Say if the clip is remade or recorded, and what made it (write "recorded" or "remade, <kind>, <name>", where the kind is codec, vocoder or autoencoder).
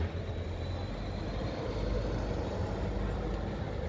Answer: recorded